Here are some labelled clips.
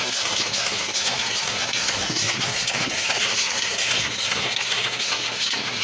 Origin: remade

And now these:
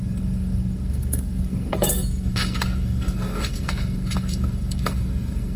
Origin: remade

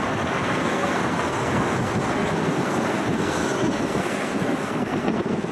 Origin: remade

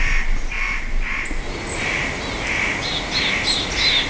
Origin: recorded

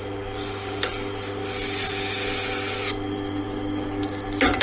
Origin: recorded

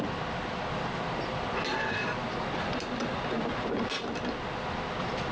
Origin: recorded